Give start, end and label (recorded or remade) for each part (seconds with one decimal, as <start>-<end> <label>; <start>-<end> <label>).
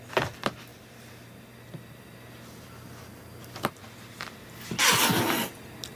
0.0-6.0 recorded